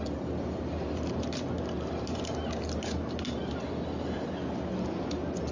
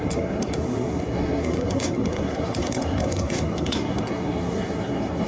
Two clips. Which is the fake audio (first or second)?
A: second